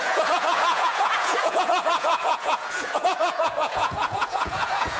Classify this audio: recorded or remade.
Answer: remade